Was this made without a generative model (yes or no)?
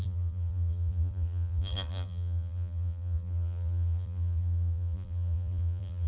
no